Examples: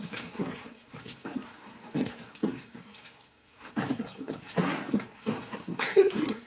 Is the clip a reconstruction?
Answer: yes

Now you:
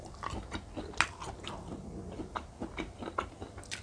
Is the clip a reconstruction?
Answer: no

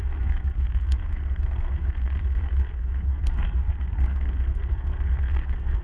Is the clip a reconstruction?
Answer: yes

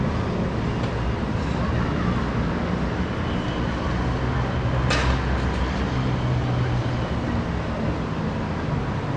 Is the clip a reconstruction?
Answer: no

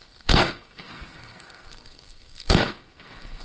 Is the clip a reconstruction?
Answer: yes